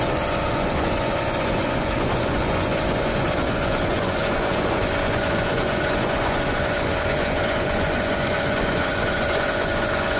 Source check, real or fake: fake